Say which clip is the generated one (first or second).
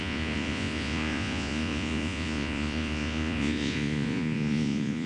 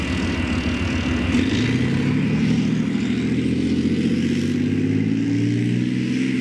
first